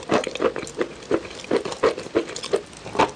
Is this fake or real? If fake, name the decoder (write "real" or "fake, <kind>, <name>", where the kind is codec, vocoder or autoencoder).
real